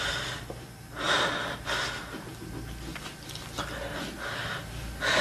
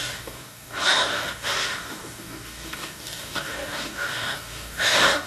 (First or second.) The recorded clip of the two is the first